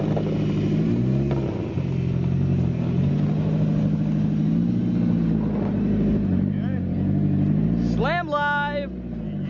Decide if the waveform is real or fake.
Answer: real